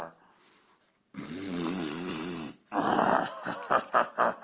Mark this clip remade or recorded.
recorded